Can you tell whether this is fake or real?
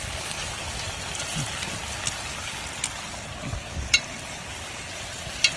real